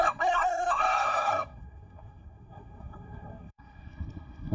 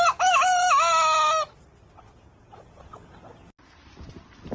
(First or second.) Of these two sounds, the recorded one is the second